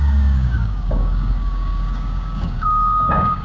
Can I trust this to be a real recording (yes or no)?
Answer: no